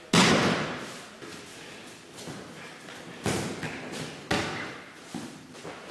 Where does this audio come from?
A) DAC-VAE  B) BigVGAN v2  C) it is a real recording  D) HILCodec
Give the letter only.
C